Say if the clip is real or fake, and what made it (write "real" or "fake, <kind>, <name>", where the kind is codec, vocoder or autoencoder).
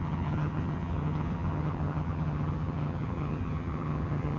fake, vocoder, HiFi-GAN